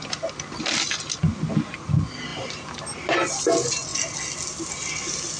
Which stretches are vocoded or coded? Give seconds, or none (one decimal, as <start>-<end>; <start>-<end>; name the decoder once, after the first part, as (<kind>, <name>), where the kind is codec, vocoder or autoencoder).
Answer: 2.3-3.1 (vocoder, BigVGAN v2); 3.9-4.7